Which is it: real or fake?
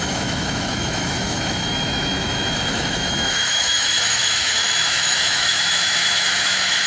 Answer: fake